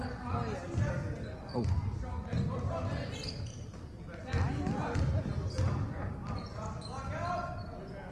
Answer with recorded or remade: recorded